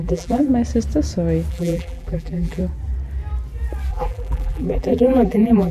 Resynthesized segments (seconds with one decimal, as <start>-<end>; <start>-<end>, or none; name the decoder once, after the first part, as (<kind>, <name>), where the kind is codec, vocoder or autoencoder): 0.0-0.5 (vocoder, BigVGAN v2); 1.5-2.6; 3.9-5.7